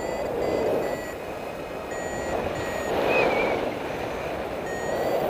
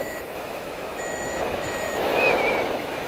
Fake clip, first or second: second